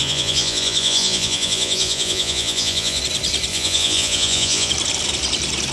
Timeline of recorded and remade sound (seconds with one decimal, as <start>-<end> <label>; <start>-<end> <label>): 0.0-3.0 remade; 3.0-3.5 recorded; 3.5-4.7 remade; 4.7-5.7 recorded